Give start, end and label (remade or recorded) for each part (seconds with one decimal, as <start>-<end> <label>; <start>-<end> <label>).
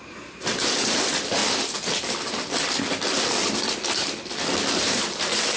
0.0-1.4 remade; 1.4-4.8 recorded; 4.8-5.6 remade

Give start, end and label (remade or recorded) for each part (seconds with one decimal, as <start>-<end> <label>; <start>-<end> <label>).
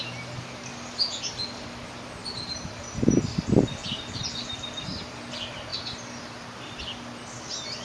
0.0-2.2 recorded; 2.2-3.0 remade; 3.0-3.8 recorded; 3.8-5.3 remade; 5.3-5.7 recorded; 5.7-6.2 remade; 6.2-7.8 recorded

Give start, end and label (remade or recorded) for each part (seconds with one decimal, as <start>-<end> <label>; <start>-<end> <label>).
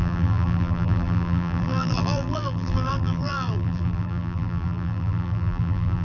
0.0-6.0 remade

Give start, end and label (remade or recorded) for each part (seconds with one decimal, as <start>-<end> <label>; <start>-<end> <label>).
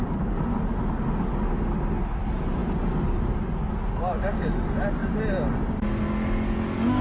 0.0-7.0 recorded